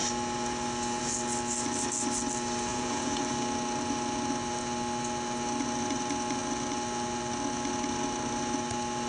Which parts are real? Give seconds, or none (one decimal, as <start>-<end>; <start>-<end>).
0.0-2.7; 3.2-9.1